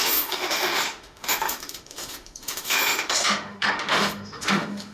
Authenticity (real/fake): fake